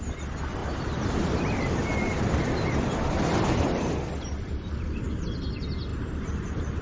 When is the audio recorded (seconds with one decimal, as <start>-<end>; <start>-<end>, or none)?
0.0-0.6; 4.7-6.8